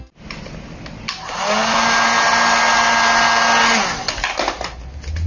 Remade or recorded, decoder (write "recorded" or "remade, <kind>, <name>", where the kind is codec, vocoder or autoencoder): recorded